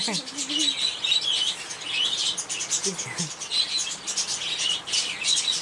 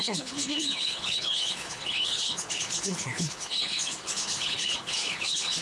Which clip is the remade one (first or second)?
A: second